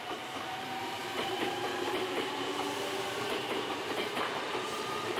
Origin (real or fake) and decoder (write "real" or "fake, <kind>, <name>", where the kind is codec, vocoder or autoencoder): fake, vocoder, BigVGAN v2